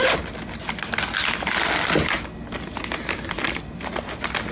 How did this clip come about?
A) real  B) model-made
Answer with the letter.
A